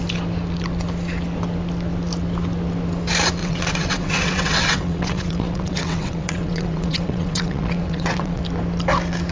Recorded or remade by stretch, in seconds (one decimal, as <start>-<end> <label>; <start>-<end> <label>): 0.0-3.4 recorded; 3.4-8.4 remade; 8.4-9.3 recorded